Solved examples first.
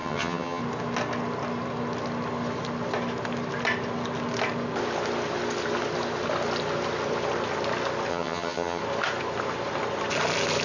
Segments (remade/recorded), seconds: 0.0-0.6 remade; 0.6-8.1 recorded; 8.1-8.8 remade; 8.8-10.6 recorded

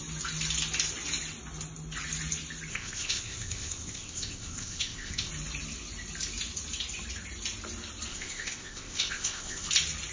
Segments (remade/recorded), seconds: 0.0-2.7 recorded; 2.7-5.3 remade; 5.3-8.1 recorded; 8.1-9.7 remade; 9.7-10.1 recorded

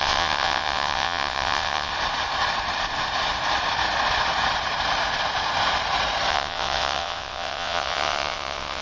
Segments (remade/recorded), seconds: 0.0-1.9 remade; 1.9-6.3 recorded; 6.3-8.8 remade

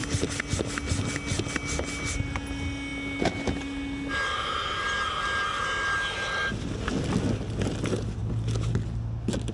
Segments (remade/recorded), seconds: 0.0-9.5 recorded